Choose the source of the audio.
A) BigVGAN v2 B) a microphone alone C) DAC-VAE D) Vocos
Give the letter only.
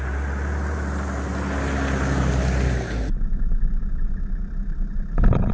B